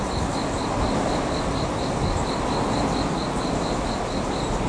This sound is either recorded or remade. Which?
recorded